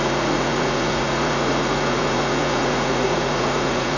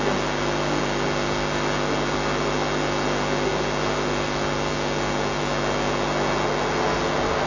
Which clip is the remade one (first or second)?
first